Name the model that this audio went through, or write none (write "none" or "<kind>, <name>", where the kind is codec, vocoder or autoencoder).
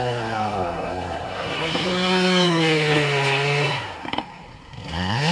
codec, SNAC